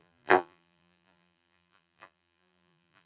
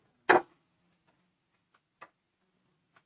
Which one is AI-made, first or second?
first